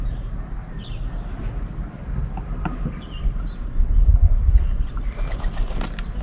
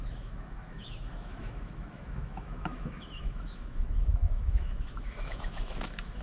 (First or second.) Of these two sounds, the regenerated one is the second